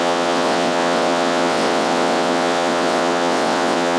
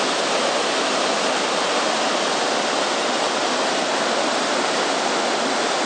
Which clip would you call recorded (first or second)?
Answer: second